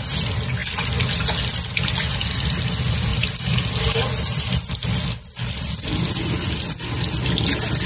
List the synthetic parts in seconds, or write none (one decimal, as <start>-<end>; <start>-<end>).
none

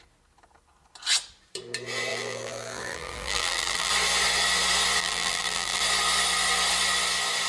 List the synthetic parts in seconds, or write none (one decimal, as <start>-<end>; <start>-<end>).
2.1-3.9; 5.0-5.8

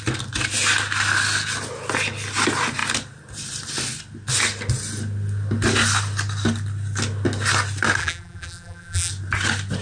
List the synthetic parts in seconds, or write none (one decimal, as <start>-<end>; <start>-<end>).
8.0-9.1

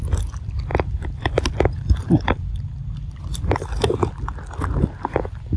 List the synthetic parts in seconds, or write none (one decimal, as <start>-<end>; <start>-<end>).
0.7-4.1

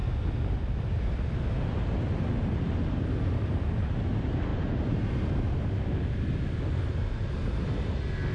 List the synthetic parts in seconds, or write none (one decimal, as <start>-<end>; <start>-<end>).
none